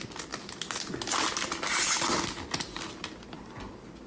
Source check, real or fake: real